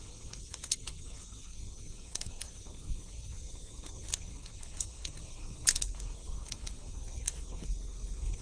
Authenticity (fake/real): fake